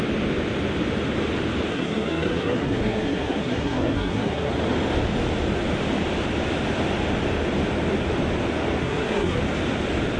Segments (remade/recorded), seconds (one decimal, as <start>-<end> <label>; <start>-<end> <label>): 0.0-1.7 recorded; 1.7-4.5 remade; 4.5-8.8 recorded; 8.8-9.4 remade; 9.4-10.2 recorded